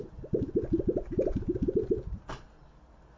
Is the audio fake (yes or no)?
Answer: no